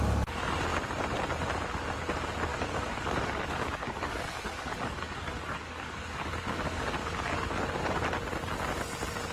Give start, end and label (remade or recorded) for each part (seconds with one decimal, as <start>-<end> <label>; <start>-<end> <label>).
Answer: 0.0-2.5 recorded; 2.5-7.6 remade; 7.6-9.3 recorded